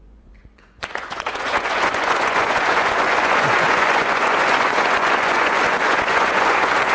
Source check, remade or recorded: remade